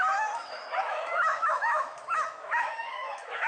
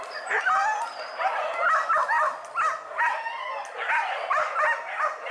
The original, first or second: second